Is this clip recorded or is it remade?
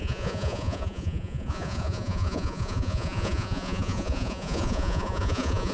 remade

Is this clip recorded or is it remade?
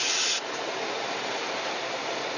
remade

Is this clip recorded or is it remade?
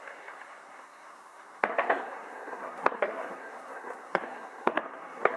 remade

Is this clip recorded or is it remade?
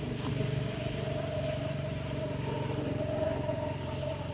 recorded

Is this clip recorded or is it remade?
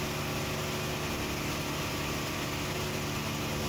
recorded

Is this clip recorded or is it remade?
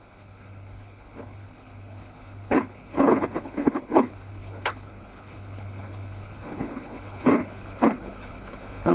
remade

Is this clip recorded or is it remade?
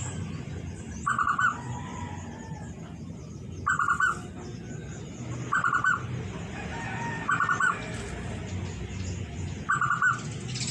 recorded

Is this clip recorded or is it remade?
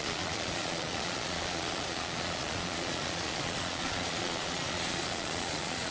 remade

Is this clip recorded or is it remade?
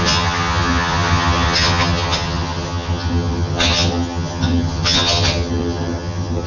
remade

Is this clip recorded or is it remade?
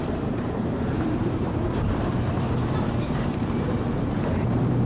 remade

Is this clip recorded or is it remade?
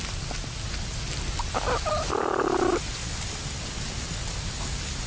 recorded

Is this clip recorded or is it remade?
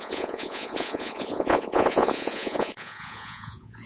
remade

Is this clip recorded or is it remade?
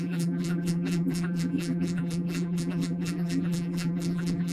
remade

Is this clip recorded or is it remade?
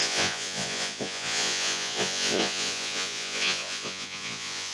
remade